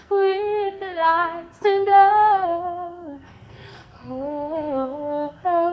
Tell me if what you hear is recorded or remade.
remade